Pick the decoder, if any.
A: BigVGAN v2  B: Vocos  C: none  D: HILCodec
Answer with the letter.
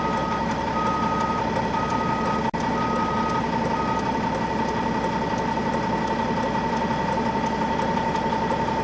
C